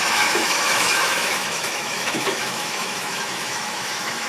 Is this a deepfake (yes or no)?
yes